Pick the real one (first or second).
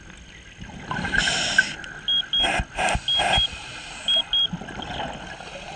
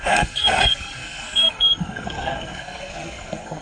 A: first